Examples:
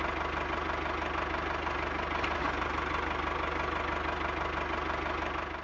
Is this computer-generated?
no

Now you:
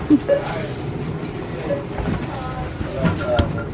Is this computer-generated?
no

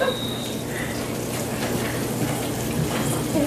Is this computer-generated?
no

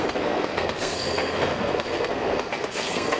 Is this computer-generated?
yes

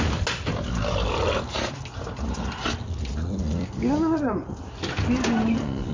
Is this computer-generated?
no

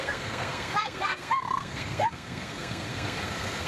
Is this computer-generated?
yes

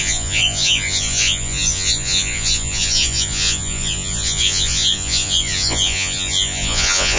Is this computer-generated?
yes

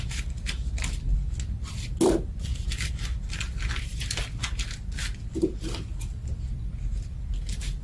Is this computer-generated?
no